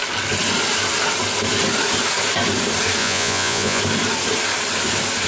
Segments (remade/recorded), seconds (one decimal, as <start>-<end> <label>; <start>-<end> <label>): 0.0-3.0 recorded; 3.0-3.8 remade; 3.8-5.3 recorded